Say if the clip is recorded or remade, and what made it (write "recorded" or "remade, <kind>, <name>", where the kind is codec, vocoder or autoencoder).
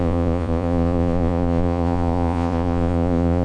remade, vocoder, Vocos